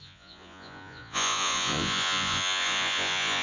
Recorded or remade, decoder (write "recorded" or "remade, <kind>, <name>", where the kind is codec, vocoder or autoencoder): remade, vocoder, Vocos